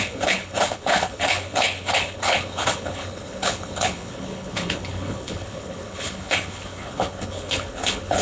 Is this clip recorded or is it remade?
remade